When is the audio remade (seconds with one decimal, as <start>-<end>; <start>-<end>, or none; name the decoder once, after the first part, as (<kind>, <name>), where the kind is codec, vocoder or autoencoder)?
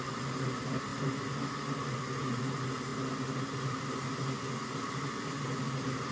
none